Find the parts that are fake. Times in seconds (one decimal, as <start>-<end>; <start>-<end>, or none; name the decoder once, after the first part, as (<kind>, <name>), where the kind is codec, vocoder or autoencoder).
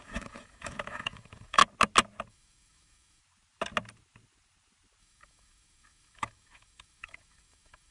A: 0.0-1.6 (autoencoder, DAC-VAE); 2.3-3.2; 5.0-7.9